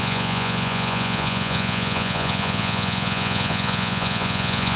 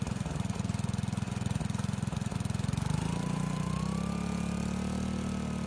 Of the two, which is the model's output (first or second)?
first